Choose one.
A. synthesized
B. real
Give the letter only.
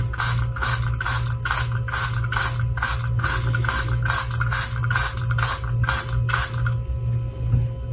B